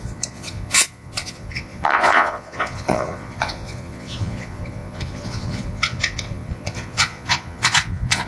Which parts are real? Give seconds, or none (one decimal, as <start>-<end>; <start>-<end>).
none